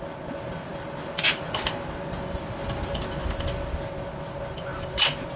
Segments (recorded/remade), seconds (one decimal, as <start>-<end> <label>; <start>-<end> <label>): 0.0-5.4 recorded

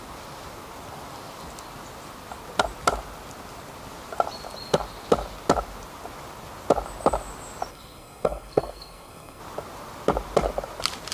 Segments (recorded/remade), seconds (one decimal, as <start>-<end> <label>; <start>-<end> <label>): 0.0-7.7 recorded; 7.7-9.4 remade; 9.4-11.1 recorded

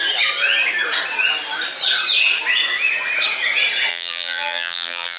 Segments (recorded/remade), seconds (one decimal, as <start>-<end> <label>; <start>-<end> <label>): 0.0-3.9 recorded; 3.9-5.2 remade

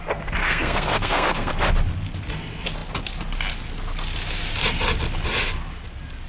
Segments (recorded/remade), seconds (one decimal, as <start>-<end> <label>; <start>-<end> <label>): 0.0-0.4 recorded; 0.4-1.5 remade; 1.5-6.3 recorded

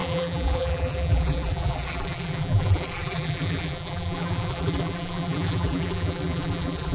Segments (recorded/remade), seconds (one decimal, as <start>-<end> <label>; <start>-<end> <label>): 0.0-6.9 remade

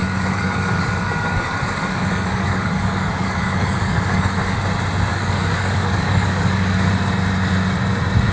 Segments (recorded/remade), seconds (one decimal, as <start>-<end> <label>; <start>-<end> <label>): 0.0-4.6 remade; 4.6-5.1 recorded; 5.1-6.9 remade; 6.9-8.3 recorded

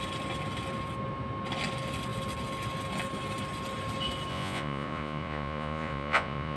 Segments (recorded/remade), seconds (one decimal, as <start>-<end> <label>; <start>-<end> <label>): 0.0-4.3 recorded; 4.3-6.6 remade

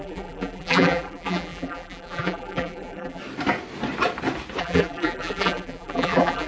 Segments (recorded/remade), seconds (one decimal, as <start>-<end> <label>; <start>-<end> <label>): 0.0-3.2 remade; 3.2-4.6 recorded; 4.6-6.5 remade